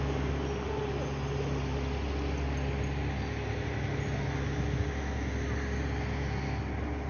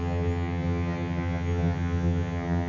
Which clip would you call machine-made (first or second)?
second